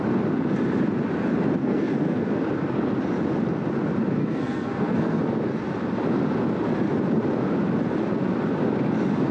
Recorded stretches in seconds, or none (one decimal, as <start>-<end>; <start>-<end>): 0.0-1.6; 2.3-4.2; 5.2-9.3

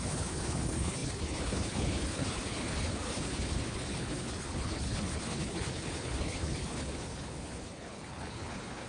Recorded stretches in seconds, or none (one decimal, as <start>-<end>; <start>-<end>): none

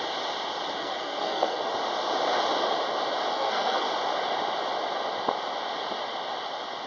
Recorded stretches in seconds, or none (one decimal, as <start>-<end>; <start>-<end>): 0.0-0.8; 1.6-3.3; 3.9-6.9

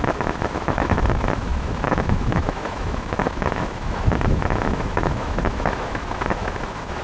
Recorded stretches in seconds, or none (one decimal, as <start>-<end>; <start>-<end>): none

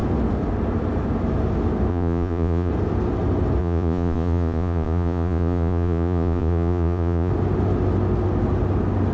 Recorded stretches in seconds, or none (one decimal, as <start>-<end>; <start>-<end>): 0.0-1.9; 2.7-3.6; 7.3-9.1

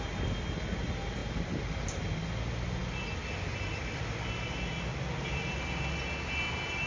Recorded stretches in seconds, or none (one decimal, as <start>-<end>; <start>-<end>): 0.0-1.2; 2.0-6.9

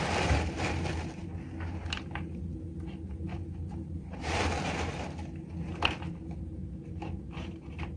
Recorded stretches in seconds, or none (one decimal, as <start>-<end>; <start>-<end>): 0.0-8.0

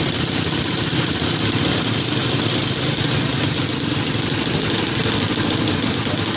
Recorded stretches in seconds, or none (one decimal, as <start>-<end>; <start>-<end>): 0.0-6.4